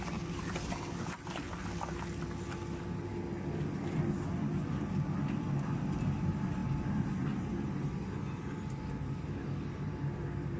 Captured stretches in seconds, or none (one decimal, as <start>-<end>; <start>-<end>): 0.0-10.6